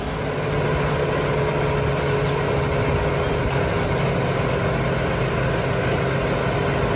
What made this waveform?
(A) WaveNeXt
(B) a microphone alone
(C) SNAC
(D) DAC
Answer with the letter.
B